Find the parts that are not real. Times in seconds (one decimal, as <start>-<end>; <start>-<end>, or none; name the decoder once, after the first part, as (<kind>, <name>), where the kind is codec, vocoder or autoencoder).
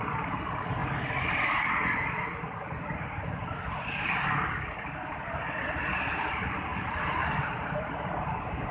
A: 0.0-0.8 (vocoder, BigVGAN v2); 5.8-8.7